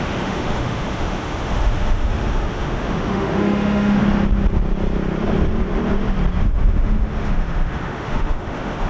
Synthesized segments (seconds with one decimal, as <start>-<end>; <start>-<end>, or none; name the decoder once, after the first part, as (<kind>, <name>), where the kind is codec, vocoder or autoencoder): 0.0-4.0 (autoencoder, DAC-VAE); 6.4-8.9

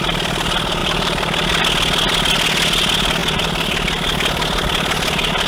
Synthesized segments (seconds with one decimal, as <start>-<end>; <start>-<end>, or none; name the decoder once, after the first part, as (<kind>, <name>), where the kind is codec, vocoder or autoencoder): 0.8-1.6 (vocoder, BigVGAN v2)

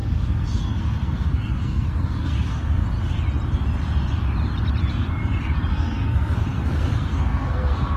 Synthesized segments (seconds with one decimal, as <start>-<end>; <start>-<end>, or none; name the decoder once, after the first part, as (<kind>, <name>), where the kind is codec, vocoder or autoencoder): 0.0-2.8 (codec, SNAC); 5.7-8.0

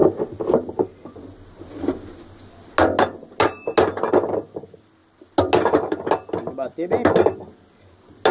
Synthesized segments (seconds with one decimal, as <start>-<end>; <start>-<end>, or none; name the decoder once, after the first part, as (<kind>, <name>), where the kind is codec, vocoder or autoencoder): none